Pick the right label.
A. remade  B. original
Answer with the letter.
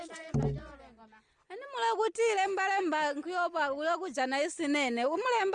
B